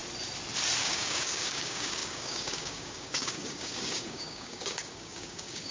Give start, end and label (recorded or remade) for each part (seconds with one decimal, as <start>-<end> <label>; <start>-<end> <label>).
0.0-0.8 recorded; 0.8-5.7 remade